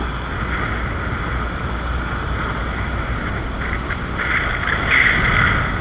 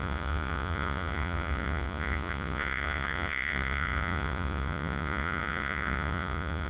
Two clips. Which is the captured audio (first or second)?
first